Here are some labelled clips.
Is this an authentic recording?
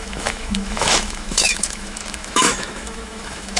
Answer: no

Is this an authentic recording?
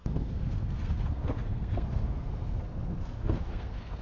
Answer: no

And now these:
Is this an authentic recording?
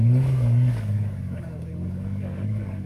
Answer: no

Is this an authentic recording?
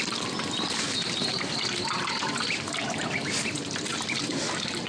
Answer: yes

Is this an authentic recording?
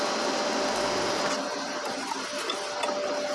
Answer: yes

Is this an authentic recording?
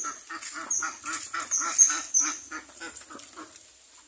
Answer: yes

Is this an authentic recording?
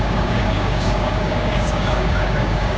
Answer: no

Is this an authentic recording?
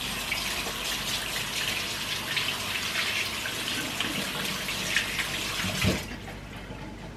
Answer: yes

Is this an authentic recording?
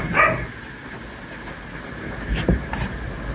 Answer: yes